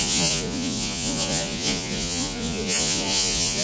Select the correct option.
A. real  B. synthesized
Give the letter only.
B